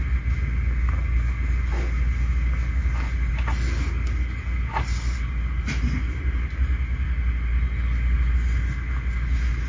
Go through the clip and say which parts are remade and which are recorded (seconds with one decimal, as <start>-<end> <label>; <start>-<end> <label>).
0.0-9.7 recorded